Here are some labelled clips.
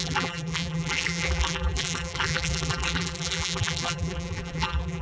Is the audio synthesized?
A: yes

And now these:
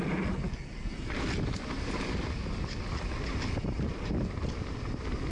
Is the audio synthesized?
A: no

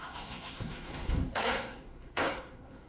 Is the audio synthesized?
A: yes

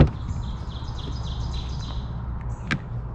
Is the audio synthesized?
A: no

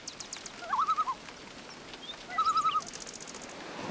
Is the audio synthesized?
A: no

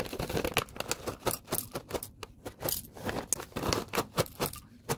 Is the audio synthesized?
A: no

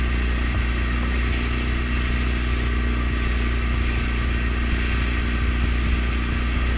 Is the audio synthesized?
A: no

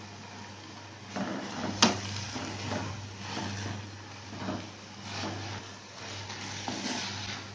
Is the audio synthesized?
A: no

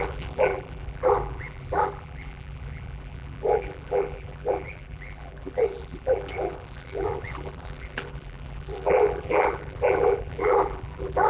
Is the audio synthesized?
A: yes